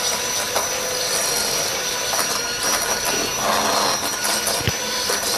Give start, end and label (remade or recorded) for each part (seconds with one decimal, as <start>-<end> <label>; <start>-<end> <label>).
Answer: 0.0-5.4 recorded